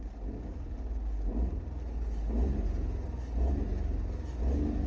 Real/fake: real